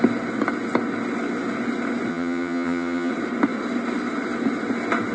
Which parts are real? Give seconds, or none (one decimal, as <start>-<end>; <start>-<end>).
0.0-2.1; 3.1-5.1